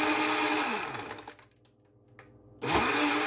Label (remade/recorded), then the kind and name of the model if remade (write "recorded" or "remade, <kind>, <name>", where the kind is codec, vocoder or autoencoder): recorded